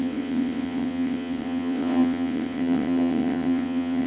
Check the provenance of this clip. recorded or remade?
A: remade